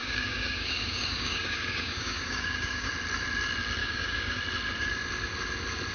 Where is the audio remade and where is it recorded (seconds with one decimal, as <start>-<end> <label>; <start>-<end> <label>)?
0.0-2.9 remade; 2.9-3.8 recorded; 3.8-4.4 remade; 4.4-5.9 recorded